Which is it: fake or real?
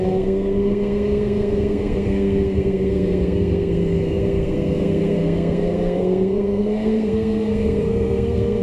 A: fake